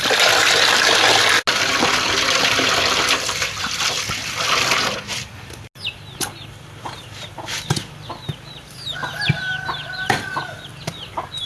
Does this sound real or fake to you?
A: real